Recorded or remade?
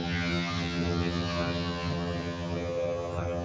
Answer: remade